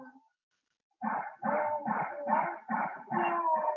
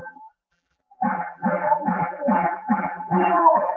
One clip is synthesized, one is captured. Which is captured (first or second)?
first